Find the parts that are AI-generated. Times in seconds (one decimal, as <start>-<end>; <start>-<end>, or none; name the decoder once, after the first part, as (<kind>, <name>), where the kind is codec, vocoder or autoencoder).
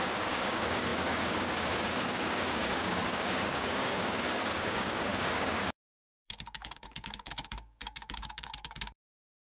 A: 0.0-9.5 (codec, DAC)